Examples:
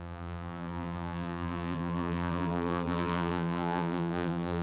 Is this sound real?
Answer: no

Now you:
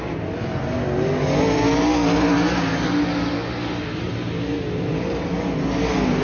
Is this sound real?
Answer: yes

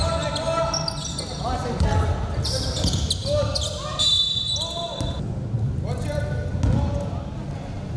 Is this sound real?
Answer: yes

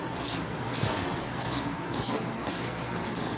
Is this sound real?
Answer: no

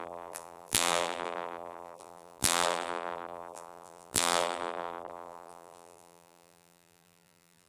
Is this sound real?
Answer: no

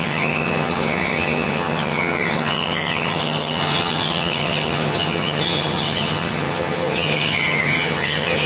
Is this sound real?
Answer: no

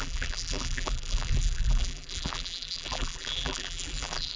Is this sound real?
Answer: no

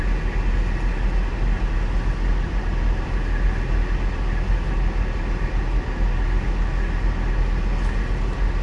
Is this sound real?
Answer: yes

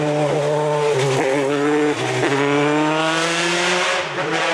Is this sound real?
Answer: yes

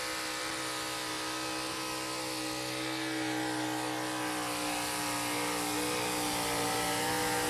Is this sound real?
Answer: yes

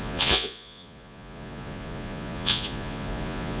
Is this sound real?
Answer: no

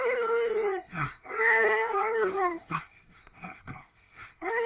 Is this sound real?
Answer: no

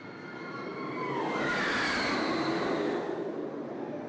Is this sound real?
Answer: yes